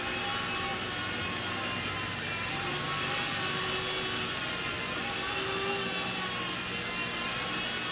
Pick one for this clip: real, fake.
real